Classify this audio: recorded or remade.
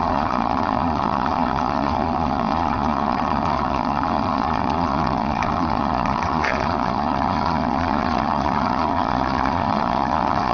remade